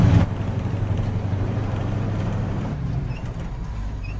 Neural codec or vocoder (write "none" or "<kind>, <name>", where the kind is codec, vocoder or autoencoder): vocoder, BigVGAN v2